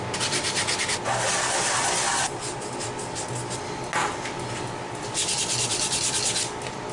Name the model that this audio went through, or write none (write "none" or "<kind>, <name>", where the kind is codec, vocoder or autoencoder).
none